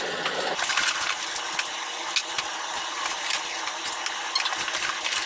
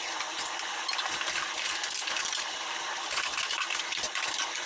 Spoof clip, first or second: second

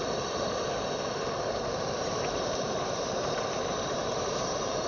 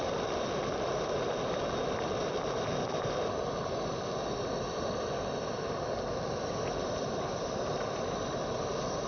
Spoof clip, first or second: first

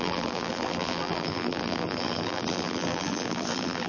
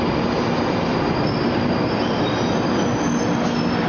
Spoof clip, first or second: first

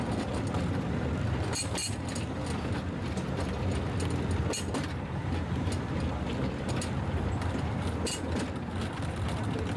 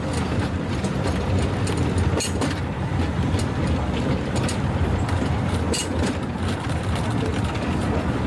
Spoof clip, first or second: second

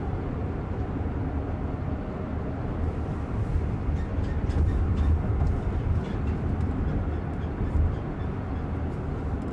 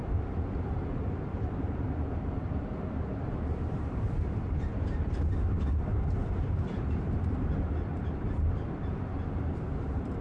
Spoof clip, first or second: second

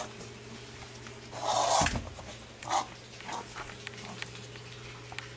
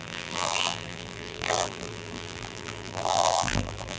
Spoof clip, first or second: second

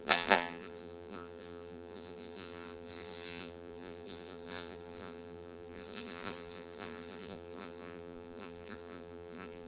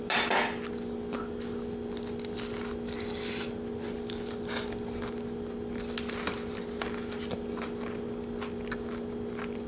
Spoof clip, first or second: first